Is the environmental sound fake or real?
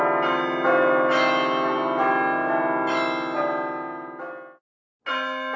real